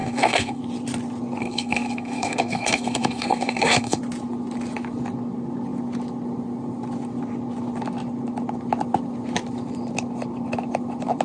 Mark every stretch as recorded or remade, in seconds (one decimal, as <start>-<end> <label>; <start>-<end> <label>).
0.0-0.6 remade; 0.6-1.4 recorded; 1.4-4.0 remade; 4.0-11.2 recorded